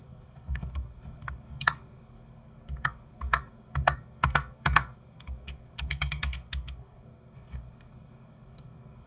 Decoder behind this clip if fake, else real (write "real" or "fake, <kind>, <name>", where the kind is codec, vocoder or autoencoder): fake, codec, SNAC